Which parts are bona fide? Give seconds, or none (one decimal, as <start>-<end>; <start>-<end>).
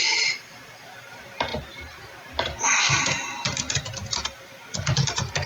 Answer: none